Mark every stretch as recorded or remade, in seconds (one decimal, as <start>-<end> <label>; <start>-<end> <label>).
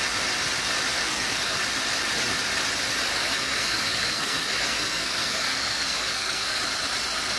0.0-0.9 recorded; 0.9-1.6 remade; 1.6-3.1 recorded; 3.1-6.6 remade; 6.6-7.4 recorded